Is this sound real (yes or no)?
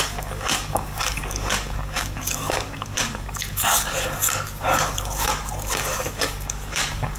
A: no